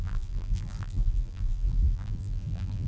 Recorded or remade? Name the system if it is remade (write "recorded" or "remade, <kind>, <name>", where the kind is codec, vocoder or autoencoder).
remade, vocoder, BigVGAN v2